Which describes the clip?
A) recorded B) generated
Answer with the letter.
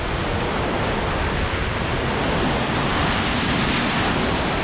A